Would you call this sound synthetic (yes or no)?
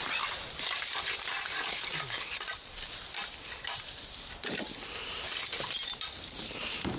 yes